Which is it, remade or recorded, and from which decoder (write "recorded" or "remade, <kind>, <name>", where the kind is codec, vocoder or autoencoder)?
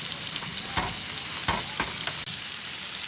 recorded